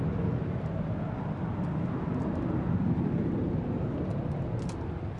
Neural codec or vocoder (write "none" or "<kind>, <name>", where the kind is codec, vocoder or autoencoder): none